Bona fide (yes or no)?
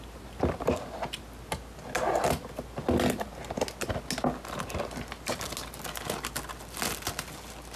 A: yes